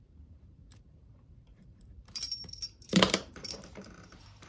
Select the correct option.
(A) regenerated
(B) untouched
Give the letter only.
A